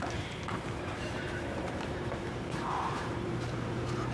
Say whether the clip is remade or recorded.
remade